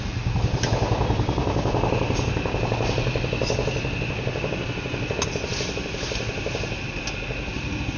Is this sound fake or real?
real